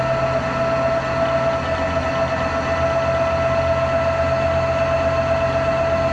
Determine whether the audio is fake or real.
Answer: real